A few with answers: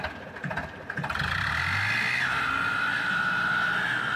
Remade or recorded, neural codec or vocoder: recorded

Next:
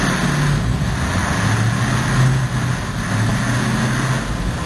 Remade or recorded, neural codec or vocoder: recorded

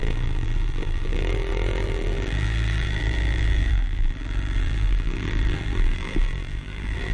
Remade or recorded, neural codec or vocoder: remade, vocoder, BigVGAN v2